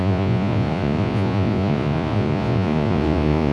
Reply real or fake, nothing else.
fake